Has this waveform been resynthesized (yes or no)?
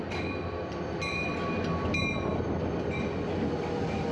no